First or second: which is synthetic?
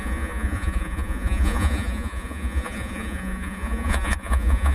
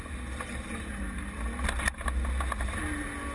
first